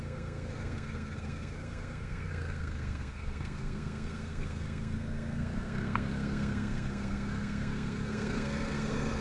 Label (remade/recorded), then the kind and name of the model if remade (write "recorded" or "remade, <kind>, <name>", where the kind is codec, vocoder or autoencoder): remade, codec, SNAC